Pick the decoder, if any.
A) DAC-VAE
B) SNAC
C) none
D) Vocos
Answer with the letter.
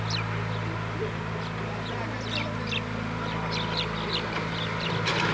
C